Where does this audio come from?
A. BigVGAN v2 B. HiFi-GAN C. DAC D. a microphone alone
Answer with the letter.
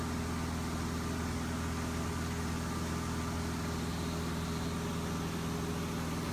D